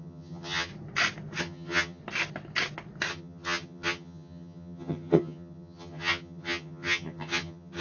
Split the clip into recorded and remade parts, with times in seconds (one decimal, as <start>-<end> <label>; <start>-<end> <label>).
0.0-0.7 remade; 0.7-1.4 recorded; 1.4-2.0 remade; 2.0-3.1 recorded; 3.1-7.8 remade